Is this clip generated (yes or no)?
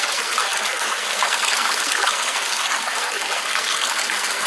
yes